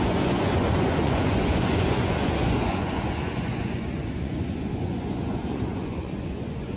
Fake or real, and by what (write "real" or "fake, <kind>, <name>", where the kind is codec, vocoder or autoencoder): fake, vocoder, Vocos